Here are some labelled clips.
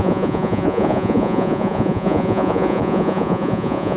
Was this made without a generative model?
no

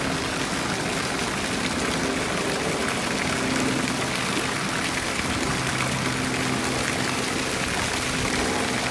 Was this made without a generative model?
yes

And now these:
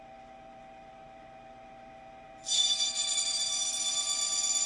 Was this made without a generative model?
yes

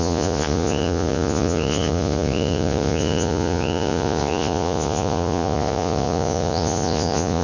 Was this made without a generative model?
no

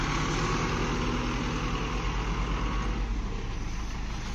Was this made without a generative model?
yes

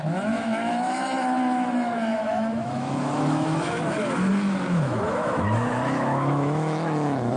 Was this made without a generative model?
no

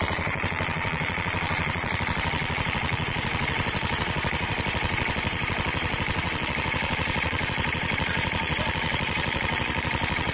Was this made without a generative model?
no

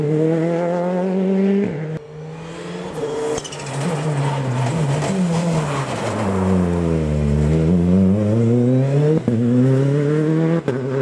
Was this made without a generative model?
yes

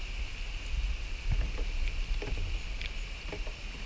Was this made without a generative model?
yes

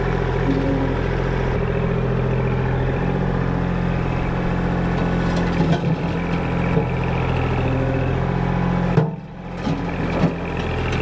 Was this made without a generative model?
yes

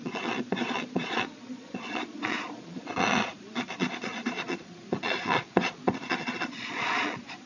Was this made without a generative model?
no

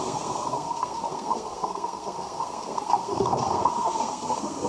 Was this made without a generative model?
no